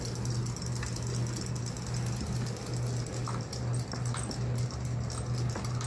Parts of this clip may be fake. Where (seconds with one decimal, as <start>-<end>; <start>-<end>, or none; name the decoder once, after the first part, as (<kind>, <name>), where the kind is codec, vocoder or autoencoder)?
none